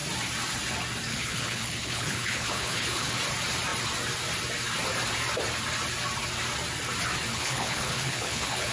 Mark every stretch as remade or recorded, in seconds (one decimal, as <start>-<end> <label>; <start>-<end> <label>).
0.0-1.1 recorded; 1.1-3.2 remade; 3.2-7.3 recorded; 7.3-8.7 remade